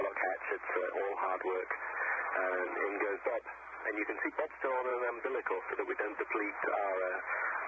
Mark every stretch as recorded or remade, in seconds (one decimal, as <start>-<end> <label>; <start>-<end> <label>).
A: 0.0-4.9 recorded; 4.9-6.3 remade; 6.3-7.7 recorded